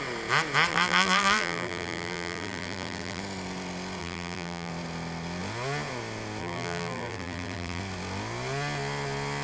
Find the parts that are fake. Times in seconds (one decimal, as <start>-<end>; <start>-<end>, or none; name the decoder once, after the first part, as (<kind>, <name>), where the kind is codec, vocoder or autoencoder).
0.7-3.2 (vocoder, BigVGAN v2); 4.0-4.7; 6.4-7.8